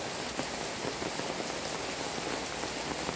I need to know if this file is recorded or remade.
recorded